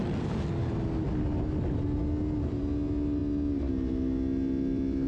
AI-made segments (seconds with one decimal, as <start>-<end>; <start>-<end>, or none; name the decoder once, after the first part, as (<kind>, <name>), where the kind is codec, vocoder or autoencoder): none

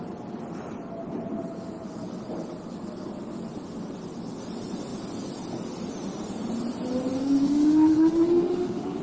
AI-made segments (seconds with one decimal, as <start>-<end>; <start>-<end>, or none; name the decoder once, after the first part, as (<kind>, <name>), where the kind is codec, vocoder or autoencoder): 7.2-9.0 (autoencoder, DAC-VAE)